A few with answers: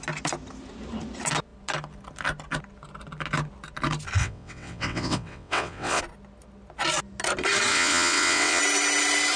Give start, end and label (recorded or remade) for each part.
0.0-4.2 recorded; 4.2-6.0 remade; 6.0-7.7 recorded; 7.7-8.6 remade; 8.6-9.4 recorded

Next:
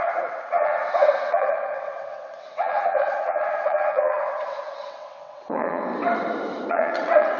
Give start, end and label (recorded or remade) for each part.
0.0-5.9 remade; 5.9-6.7 recorded; 6.7-7.4 remade

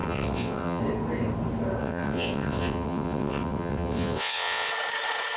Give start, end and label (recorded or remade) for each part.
0.0-0.8 remade; 0.8-1.8 recorded; 1.8-4.7 remade; 4.7-5.4 recorded

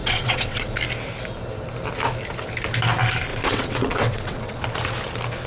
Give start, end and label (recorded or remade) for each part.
0.0-0.8 remade; 0.8-3.3 recorded; 3.3-4.6 remade; 4.6-5.5 recorded

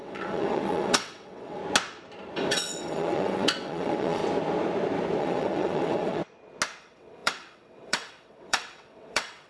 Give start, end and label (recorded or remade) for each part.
0.0-1.6 remade; 1.6-2.5 recorded; 2.5-4.2 remade; 4.2-5.2 recorded; 5.2-6.2 remade; 6.2-6.8 recorded; 6.8-9.5 remade

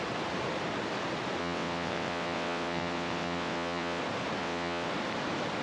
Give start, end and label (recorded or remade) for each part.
0.0-1.4 recorded; 1.4-4.0 remade; 4.0-4.4 recorded; 4.4-4.9 remade; 4.9-5.6 recorded

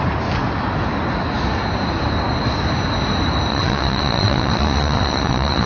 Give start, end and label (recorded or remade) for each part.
0.0-3.5 recorded; 3.5-5.7 remade

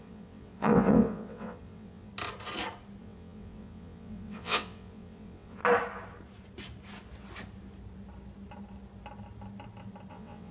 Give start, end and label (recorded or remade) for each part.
0.0-2.1 remade; 2.1-3.0 recorded; 3.0-5.6 remade; 5.6-10.1 recorded; 10.1-10.5 remade